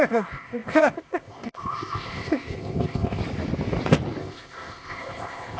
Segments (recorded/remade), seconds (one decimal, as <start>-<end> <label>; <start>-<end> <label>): 0.0-3.2 remade; 3.2-4.2 recorded; 4.2-5.6 remade